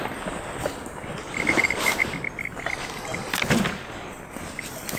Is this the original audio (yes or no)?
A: yes